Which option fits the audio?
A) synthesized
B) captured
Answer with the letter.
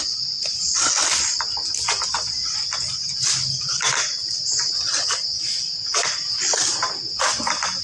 B